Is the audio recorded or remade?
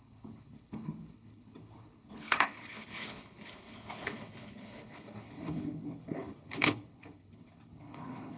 remade